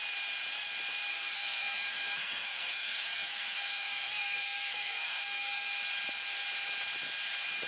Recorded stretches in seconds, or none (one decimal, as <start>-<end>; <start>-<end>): 0.0-1.1; 5.7-7.7